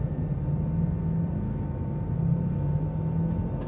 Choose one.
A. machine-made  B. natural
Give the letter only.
B